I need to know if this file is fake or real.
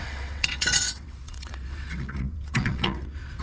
fake